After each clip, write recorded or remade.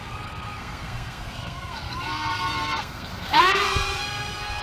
remade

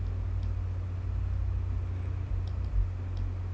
recorded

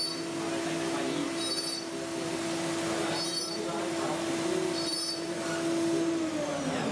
recorded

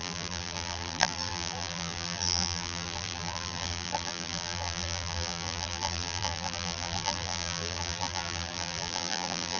remade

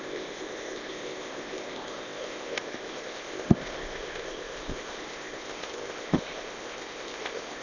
remade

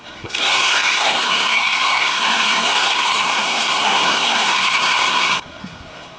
remade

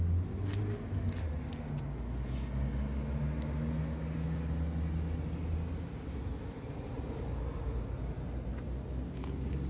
recorded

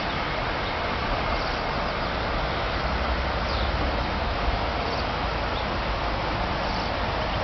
recorded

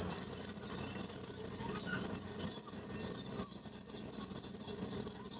recorded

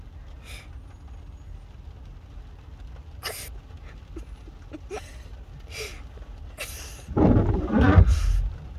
recorded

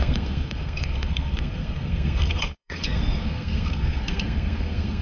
remade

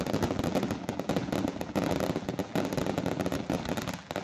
remade